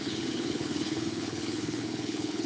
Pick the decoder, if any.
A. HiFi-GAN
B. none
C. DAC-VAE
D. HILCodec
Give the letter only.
D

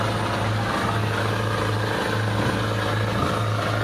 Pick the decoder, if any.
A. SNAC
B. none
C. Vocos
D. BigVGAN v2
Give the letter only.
B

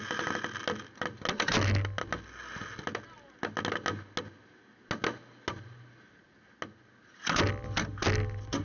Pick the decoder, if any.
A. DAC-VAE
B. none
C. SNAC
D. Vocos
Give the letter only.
B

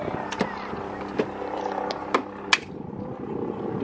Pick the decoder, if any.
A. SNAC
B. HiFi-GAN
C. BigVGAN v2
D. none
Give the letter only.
D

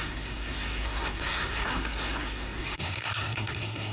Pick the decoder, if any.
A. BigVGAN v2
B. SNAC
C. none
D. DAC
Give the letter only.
B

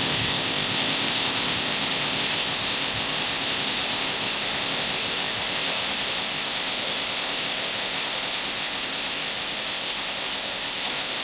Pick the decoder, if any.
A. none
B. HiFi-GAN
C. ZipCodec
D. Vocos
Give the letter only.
C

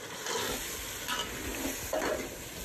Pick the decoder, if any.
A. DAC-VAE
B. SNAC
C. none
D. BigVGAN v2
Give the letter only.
C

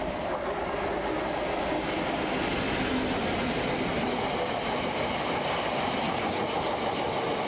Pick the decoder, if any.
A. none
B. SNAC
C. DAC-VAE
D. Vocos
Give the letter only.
A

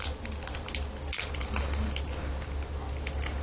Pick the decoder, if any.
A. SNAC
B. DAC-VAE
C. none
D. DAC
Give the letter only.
C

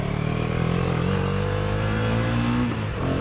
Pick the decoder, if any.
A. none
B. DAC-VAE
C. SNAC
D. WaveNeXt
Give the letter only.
A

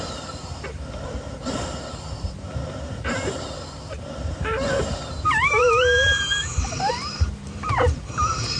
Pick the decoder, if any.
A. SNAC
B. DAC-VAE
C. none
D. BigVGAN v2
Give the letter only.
D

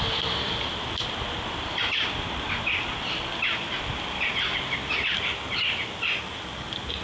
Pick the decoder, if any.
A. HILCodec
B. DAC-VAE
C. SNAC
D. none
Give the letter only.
D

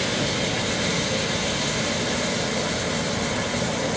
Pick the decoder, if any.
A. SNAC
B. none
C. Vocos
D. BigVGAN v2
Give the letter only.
B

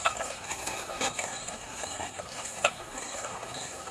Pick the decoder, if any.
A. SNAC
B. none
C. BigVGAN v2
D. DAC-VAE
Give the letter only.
A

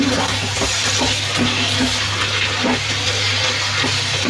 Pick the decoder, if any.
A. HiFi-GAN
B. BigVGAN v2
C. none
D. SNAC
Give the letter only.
C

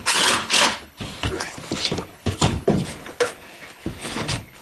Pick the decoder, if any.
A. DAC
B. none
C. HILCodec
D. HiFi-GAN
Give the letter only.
C